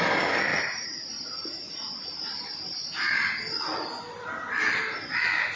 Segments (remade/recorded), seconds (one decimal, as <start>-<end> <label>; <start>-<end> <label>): 0.0-5.6 recorded